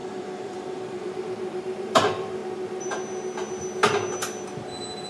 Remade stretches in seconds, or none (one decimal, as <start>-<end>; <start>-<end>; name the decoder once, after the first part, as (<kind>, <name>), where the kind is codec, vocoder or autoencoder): 0.0-2.4 (vocoder, BigVGAN v2)